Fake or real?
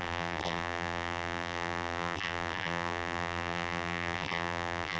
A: fake